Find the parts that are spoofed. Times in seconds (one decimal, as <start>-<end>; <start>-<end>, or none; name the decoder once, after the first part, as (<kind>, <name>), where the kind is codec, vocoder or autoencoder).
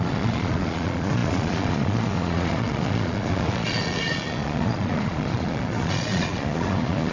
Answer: 0.0-7.1 (vocoder, Vocos)